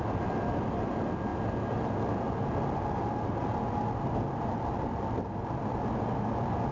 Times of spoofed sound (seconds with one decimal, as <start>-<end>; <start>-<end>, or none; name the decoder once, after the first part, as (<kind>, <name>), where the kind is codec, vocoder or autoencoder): none